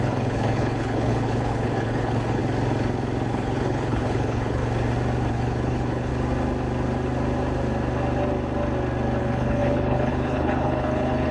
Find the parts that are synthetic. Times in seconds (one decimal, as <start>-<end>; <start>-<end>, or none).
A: 0.0-2.4; 3.3-4.6; 5.3-6.1; 9.2-11.3